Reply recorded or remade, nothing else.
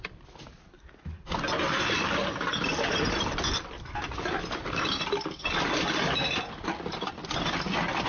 recorded